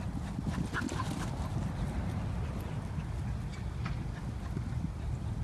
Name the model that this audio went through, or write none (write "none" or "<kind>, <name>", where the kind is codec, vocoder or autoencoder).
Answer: none